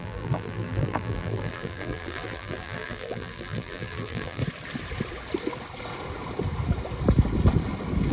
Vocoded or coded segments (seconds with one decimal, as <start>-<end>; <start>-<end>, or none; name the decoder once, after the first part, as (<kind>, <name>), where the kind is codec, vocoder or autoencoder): 0.0-4.4 (vocoder, BigVGAN v2)